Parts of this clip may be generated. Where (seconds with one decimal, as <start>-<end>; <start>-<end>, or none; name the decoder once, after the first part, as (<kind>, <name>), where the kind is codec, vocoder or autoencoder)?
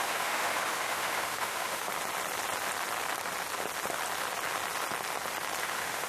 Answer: 0.0-1.9 (autoencoder, DAC-VAE); 5.6-6.1